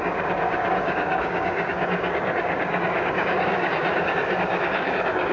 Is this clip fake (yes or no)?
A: yes